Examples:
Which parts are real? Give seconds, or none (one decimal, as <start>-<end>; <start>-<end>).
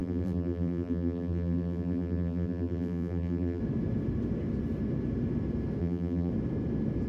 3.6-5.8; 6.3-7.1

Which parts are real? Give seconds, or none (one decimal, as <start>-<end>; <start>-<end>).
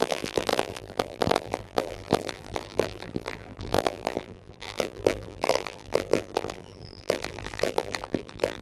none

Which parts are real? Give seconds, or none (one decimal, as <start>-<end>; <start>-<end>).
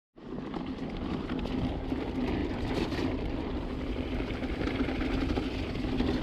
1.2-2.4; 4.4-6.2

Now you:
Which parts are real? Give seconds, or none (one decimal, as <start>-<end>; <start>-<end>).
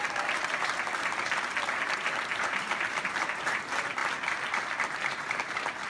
0.0-2.3; 3.6-5.9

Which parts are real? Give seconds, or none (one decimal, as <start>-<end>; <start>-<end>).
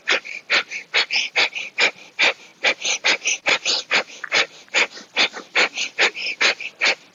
0.0-2.5; 4.9-7.1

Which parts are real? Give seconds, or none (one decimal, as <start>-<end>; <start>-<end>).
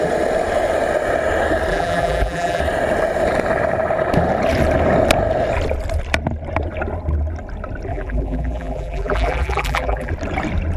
0.0-1.7; 2.6-7.9; 10.1-10.8